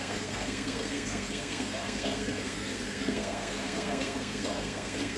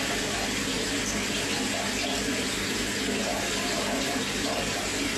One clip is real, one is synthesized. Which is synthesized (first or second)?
first